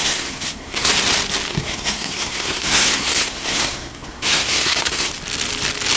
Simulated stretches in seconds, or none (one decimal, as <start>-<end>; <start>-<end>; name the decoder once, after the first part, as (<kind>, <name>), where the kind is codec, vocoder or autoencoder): 0.0-0.9 (codec, SNAC); 1.5-5.1

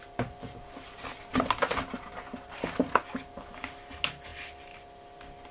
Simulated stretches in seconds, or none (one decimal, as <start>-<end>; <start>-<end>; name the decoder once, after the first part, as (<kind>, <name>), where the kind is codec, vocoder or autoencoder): none

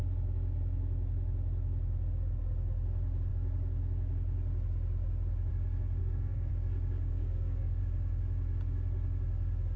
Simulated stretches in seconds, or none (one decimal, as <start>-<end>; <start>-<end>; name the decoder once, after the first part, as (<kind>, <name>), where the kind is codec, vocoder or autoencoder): 6.0-6.5 (codec, SNAC); 7.1-7.8

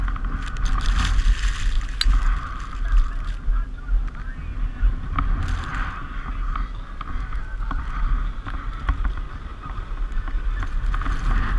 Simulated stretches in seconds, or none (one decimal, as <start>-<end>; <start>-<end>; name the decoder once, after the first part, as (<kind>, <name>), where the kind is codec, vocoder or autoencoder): none